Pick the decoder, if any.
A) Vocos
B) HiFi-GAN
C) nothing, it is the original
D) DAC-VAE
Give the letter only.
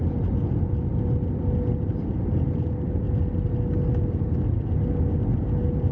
C